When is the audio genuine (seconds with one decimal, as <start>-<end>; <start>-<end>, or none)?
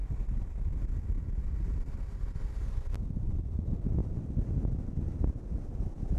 0.0-6.2